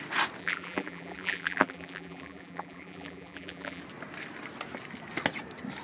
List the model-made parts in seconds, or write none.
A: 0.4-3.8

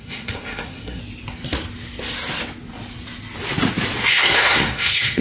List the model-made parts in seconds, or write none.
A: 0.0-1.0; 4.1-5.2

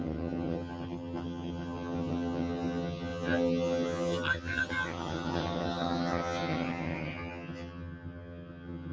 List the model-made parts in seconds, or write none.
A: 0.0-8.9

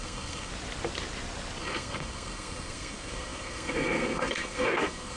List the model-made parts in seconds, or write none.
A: 0.0-0.5; 1.6-5.2

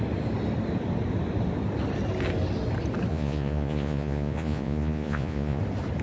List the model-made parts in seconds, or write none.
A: 3.1-5.6